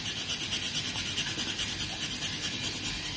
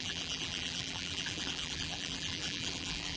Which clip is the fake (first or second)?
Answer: second